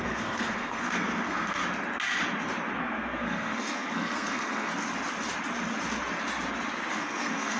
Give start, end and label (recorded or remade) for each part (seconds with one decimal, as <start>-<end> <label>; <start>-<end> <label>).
0.0-1.6 remade; 1.6-2.8 recorded; 2.8-4.7 remade; 4.7-6.9 recorded; 6.9-7.6 remade